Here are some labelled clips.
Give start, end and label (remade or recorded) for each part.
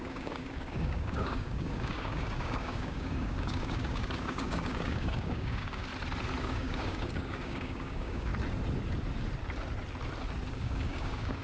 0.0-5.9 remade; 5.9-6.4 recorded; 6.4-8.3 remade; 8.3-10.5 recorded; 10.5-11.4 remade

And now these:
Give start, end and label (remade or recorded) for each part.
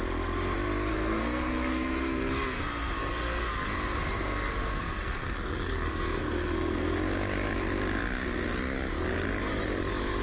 0.0-0.9 recorded; 0.9-2.6 remade; 2.6-3.0 recorded; 3.0-6.9 remade; 6.9-10.2 recorded